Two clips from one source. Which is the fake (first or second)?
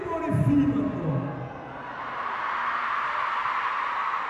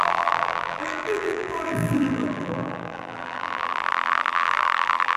second